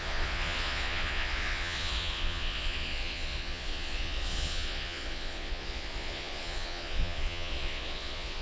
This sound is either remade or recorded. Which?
remade